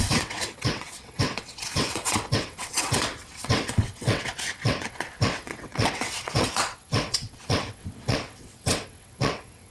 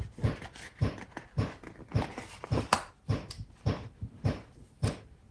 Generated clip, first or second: first